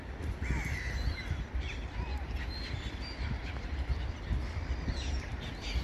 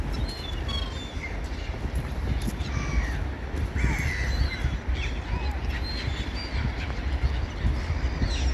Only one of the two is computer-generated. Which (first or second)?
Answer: first